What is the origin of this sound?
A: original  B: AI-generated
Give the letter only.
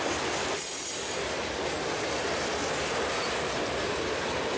A